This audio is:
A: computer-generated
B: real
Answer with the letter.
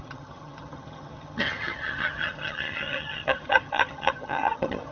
A